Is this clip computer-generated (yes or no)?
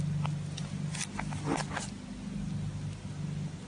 no